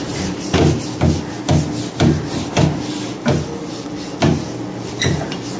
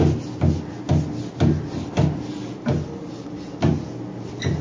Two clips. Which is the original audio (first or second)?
second